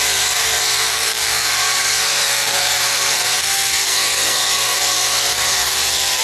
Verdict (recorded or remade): remade